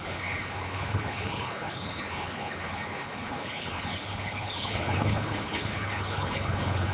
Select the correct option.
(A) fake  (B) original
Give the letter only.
A